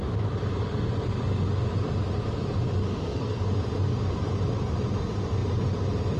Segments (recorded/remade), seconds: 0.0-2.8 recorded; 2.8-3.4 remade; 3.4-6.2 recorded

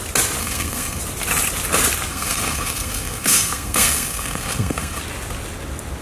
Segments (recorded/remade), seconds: 0.0-0.4 recorded; 0.4-1.0 remade; 1.0-2.1 recorded; 2.1-5.0 remade; 5.0-6.0 recorded

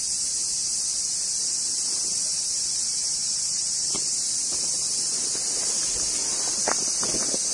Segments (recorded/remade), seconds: 0.0-7.5 recorded

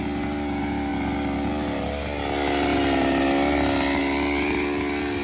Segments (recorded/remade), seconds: 0.0-5.2 recorded

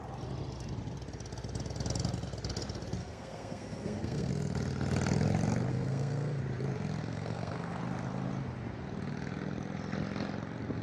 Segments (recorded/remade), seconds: 0.0-3.0 recorded; 3.0-4.3 remade; 4.3-5.7 recorded; 5.7-6.4 remade; 6.4-7.0 recorded; 7.0-7.8 remade; 7.8-10.8 recorded

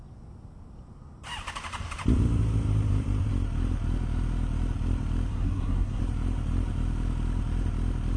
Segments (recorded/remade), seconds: 0.0-5.3 recorded; 5.3-6.0 remade; 6.0-8.2 recorded